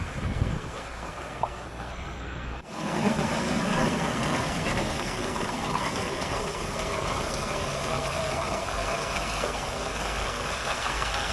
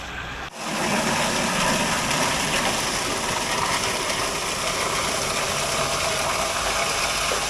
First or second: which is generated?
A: first